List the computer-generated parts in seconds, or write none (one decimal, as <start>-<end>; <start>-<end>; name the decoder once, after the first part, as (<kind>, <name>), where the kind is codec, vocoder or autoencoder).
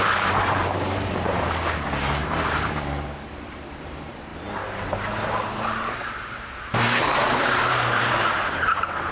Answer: 0.0-9.1 (vocoder, BigVGAN v2)